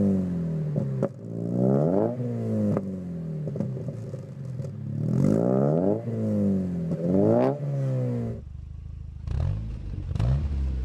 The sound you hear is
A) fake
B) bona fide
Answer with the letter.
B